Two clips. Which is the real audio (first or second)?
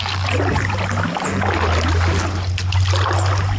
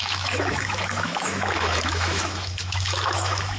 first